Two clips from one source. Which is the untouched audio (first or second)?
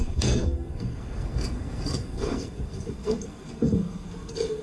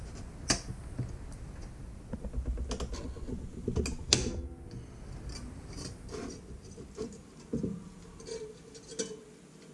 second